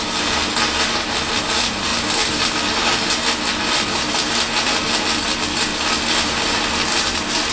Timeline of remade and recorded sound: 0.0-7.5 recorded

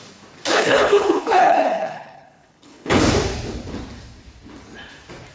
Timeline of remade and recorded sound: 0.0-0.5 recorded; 0.5-3.0 remade; 3.0-5.3 recorded

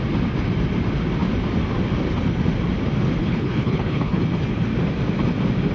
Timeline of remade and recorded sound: 0.0-3.2 recorded; 3.2-4.2 remade; 4.2-5.7 recorded

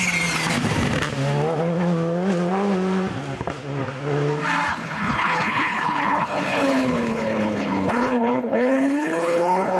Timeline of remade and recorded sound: 0.0-4.7 recorded; 4.7-9.8 remade

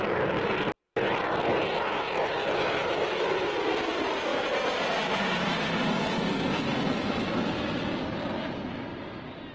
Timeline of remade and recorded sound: 0.0-9.5 recorded

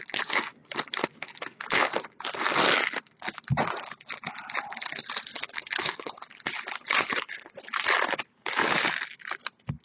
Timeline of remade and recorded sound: 0.0-5.3 recorded; 5.3-6.2 remade; 6.2-6.8 recorded; 6.8-7.6 remade; 7.6-9.8 recorded

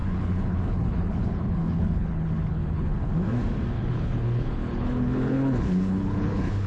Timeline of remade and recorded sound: 0.0-3.1 remade; 3.1-3.7 recorded; 3.7-6.7 remade